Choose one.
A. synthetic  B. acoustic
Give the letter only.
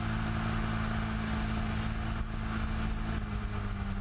B